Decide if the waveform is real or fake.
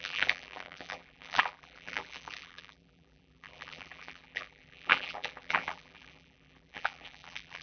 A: fake